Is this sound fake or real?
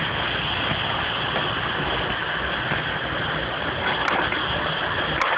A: real